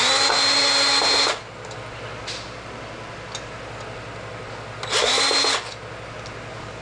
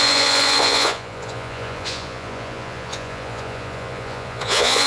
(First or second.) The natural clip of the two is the first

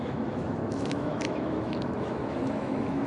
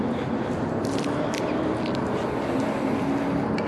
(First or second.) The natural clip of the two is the second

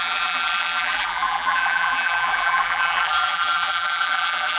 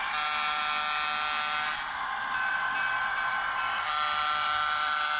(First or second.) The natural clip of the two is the second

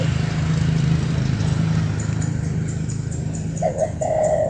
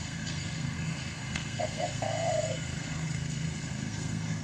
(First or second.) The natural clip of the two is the first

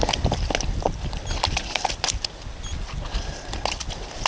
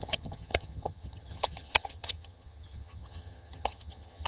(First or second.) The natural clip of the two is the first